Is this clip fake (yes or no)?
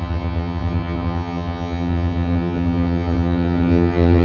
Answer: yes